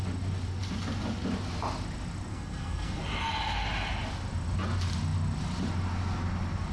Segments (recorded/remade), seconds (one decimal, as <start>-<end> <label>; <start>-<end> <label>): 0.0-2.3 recorded; 2.3-3.0 remade; 3.0-6.7 recorded

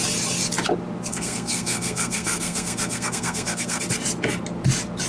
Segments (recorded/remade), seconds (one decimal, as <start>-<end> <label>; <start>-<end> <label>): 0.0-1.1 recorded; 1.1-3.8 remade; 3.8-5.1 recorded

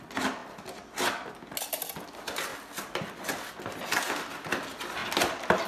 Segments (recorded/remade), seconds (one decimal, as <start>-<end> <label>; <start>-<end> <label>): 0.0-5.7 recorded

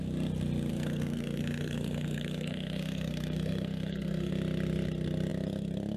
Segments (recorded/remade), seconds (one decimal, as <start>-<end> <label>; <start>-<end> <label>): 0.0-0.7 recorded; 0.7-4.3 remade; 4.3-6.0 recorded